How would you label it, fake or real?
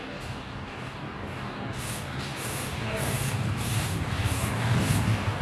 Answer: fake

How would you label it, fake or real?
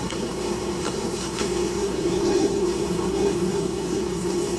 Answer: fake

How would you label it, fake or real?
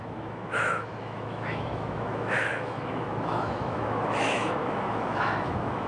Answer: fake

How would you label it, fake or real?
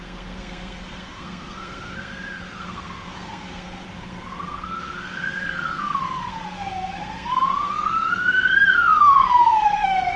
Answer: fake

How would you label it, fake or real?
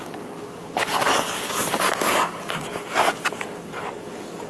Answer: fake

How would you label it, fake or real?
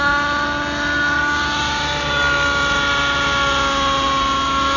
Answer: real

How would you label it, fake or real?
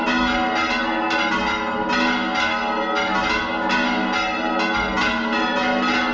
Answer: real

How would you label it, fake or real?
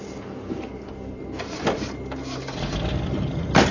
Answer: real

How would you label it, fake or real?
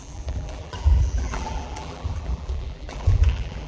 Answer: fake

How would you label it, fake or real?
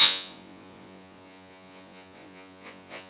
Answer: fake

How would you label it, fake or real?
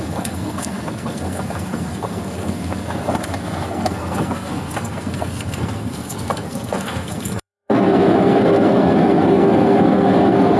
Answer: fake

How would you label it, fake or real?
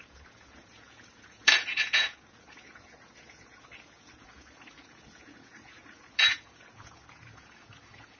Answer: fake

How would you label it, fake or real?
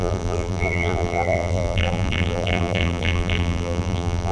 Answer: fake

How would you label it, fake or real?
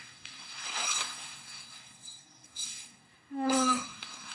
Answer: fake